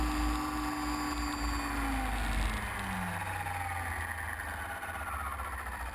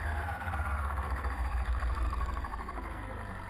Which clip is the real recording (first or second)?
first